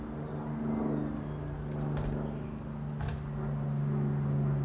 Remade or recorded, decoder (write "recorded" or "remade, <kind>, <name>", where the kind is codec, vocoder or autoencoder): recorded